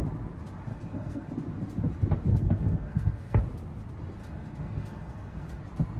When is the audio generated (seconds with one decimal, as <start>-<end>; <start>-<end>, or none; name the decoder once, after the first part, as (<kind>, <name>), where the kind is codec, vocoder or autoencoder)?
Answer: 0.7-1.3 (codec, SNAC); 2.3-3.4; 4.2-5.6